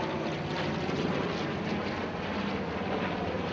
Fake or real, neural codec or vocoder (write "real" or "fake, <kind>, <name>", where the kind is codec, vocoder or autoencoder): real